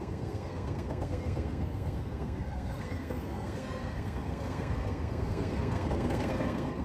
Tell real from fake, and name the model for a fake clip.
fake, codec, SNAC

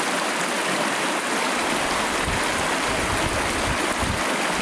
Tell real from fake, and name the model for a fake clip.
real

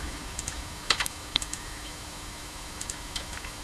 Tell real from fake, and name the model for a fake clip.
fake, autoencoder, DAC-VAE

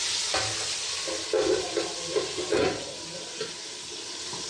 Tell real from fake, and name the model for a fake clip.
real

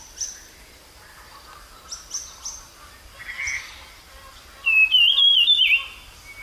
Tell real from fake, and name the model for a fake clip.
real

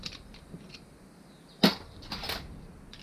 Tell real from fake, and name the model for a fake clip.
real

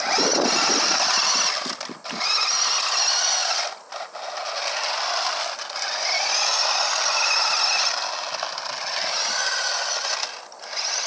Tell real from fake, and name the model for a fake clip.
real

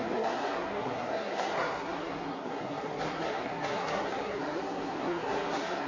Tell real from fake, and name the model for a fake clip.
fake, codec, SNAC